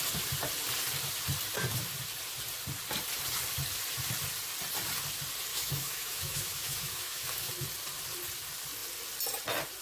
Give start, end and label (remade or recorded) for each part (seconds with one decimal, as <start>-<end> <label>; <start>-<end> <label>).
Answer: 0.0-5.5 recorded; 5.5-7.5 remade; 7.5-9.8 recorded